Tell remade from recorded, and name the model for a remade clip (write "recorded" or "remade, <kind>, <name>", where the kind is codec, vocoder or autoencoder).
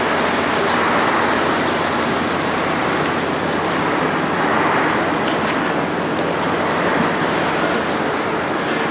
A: recorded